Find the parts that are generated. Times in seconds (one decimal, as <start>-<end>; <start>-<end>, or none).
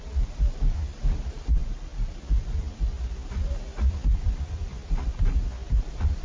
none